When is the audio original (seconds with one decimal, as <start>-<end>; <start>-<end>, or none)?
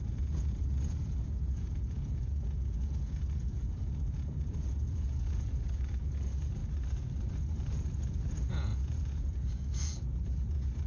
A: 6.6-7.3